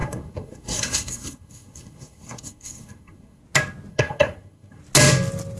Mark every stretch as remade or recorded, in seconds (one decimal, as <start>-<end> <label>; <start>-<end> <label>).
0.0-3.4 remade; 3.4-3.9 recorded; 3.9-4.8 remade; 4.8-5.6 recorded